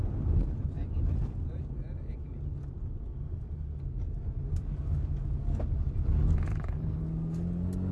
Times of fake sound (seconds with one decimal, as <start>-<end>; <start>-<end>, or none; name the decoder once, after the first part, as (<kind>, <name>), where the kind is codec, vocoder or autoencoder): 6.5-7.0 (codec, HILCodec)